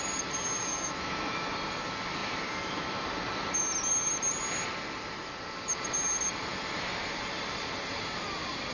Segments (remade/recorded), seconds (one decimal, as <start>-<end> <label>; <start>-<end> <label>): 0.0-0.7 recorded; 0.7-1.5 remade; 1.5-8.7 recorded